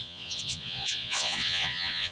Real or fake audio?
fake